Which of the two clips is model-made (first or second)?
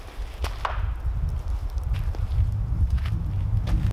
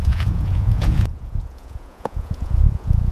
second